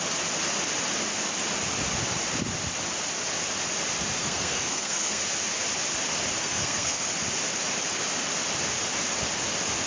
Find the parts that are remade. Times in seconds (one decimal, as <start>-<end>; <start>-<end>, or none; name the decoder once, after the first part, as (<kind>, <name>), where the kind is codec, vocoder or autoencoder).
4.2-5.2 (codec, SNAC); 6.4-7.1